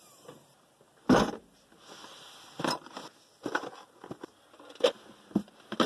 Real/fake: real